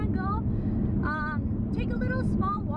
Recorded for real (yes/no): yes